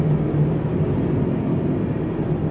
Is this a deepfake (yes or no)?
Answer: no